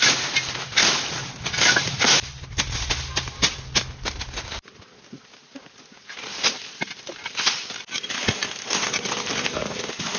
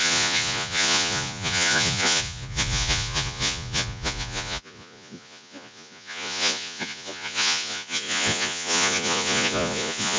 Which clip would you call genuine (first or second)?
first